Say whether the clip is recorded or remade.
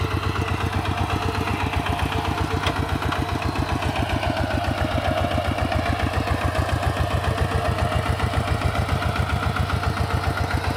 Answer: recorded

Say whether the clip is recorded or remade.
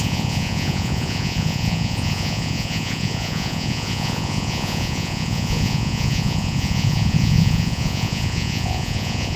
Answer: remade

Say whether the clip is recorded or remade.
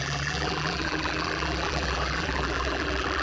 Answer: remade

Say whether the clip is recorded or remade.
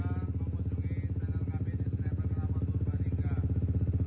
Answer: recorded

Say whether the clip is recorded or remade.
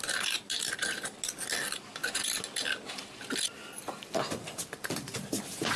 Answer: recorded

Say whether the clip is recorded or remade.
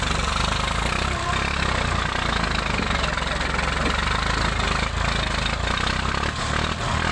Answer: recorded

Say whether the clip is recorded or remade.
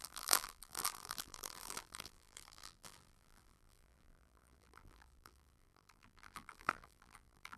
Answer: remade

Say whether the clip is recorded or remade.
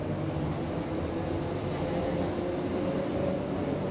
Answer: recorded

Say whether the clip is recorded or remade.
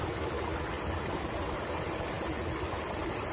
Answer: recorded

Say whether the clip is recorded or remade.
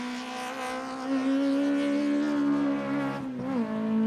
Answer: recorded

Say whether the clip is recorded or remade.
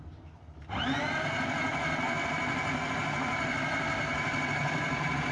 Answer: recorded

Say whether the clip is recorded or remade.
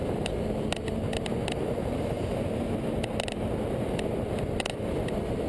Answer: recorded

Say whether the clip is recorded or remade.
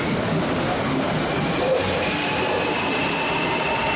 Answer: recorded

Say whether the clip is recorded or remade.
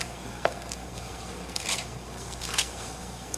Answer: remade